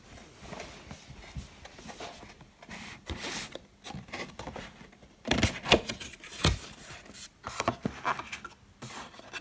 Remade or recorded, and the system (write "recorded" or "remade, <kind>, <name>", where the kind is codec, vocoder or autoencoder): recorded